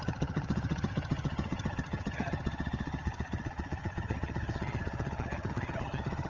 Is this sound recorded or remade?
remade